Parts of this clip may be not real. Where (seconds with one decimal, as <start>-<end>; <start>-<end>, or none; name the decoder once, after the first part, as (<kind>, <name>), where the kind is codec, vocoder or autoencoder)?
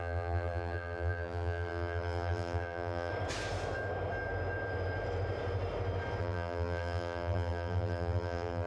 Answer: 0.0-3.1 (vocoder, BigVGAN v2); 6.2-8.7